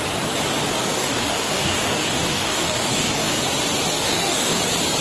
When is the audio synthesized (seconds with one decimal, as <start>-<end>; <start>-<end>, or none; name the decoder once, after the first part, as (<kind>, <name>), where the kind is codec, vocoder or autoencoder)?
0.7-3.4 (codec, DAC); 3.9-4.6